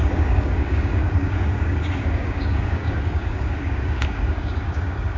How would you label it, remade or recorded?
remade